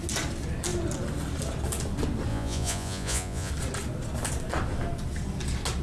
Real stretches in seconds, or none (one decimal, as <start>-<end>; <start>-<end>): 0.0-2.3; 3.5-5.8